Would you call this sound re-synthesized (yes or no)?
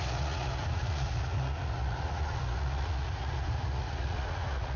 yes